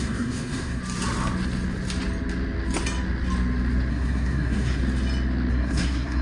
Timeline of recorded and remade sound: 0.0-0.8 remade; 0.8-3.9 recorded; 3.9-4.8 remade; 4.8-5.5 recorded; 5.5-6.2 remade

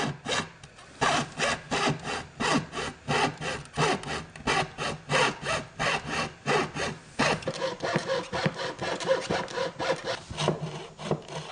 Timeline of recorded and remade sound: 0.0-11.5 recorded

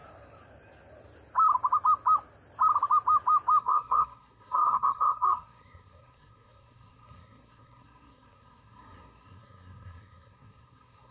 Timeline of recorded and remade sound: 0.0-3.6 recorded; 3.6-11.1 remade

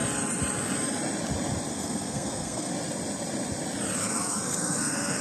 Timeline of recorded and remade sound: 0.0-1.7 recorded; 1.7-2.7 remade; 2.7-4.0 recorded; 4.0-5.2 remade